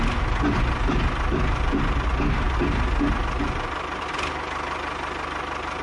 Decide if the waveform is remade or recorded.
recorded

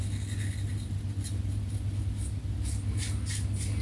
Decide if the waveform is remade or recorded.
recorded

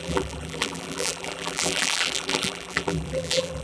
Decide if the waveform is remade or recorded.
remade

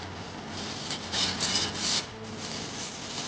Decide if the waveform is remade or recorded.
recorded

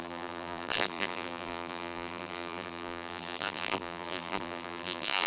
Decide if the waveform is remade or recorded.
remade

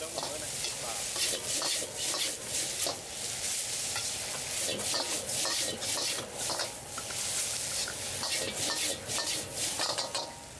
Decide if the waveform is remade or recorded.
recorded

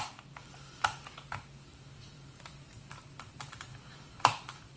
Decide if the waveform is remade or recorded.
remade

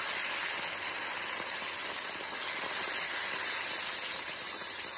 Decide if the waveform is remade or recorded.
recorded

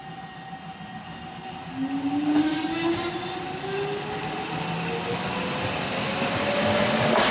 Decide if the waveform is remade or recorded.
recorded